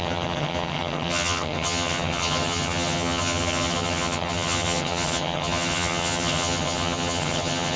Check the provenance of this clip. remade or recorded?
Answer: remade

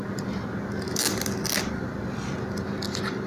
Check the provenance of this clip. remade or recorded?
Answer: recorded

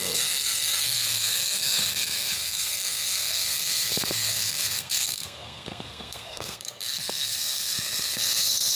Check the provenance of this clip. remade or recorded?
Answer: remade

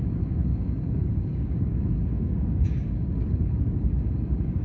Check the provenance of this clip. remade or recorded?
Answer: remade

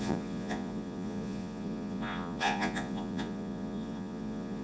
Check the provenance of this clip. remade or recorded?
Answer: remade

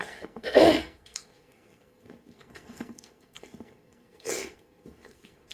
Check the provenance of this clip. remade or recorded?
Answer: remade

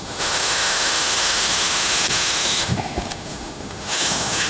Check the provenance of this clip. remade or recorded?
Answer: remade